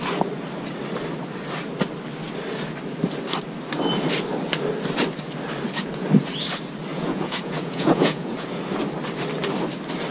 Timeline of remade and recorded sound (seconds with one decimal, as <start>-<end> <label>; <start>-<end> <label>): 0.0-6.9 recorded; 6.9-8.6 remade; 8.6-10.1 recorded

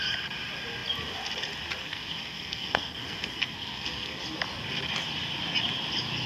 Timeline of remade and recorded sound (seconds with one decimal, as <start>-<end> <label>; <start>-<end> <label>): 0.0-1.8 recorded; 1.8-4.2 remade; 4.2-6.3 recorded

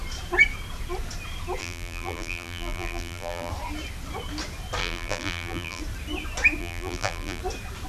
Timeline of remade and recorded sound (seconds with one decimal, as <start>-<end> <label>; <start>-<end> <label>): 0.0-1.6 recorded; 1.6-3.5 remade; 3.5-4.8 recorded; 4.8-5.8 remade; 5.8-6.6 recorded; 6.6-7.4 remade; 7.4-7.9 recorded

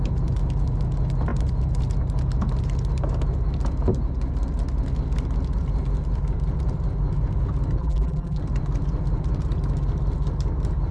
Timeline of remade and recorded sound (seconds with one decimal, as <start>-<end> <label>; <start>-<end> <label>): 0.0-7.8 recorded; 7.8-8.4 remade; 8.4-10.9 recorded

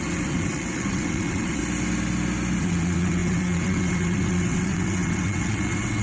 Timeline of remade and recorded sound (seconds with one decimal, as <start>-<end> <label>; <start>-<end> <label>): 0.0-1.6 remade; 1.6-2.6 recorded; 2.6-6.0 remade

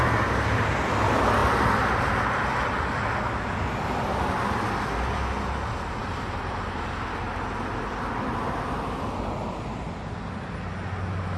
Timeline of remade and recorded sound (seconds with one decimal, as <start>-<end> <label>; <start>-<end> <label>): 0.0-6.0 recorded; 6.0-6.9 remade; 6.9-11.4 recorded

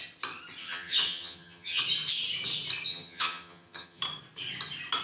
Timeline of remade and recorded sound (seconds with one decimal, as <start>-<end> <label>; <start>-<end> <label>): 0.0-0.6 recorded; 0.6-1.8 remade; 1.8-2.9 recorded; 2.9-4.0 remade; 4.0-5.0 recorded